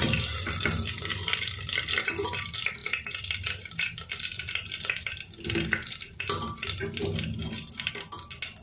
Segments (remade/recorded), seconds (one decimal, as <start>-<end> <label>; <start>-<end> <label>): 0.0-8.6 recorded